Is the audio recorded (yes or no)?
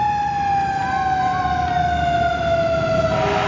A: yes